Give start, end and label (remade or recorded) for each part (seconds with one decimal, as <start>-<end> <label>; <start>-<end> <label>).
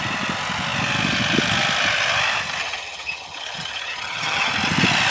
0.0-2.6 recorded; 2.6-4.5 remade; 4.5-5.1 recorded